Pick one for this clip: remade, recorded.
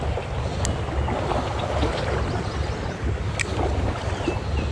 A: recorded